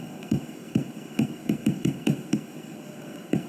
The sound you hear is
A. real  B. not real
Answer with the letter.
B